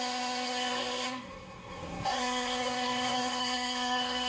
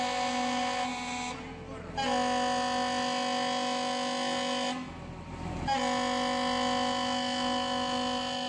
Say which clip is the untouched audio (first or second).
second